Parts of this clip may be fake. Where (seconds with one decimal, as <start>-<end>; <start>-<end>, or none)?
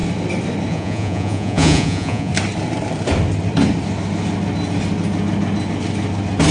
0.7-2.3